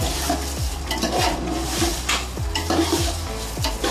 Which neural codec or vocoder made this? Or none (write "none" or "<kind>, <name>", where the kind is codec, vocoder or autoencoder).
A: none